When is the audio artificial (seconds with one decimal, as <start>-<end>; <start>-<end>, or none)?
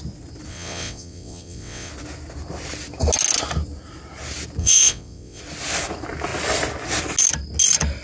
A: 0.5-1.9; 4.6-5.4